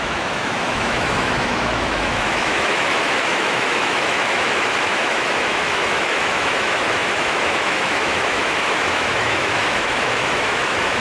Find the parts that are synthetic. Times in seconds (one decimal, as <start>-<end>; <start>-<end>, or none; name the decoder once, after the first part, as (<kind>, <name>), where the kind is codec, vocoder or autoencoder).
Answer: 0.0-11.0 (autoencoder, DAC-VAE)